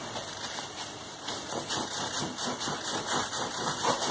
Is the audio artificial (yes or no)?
yes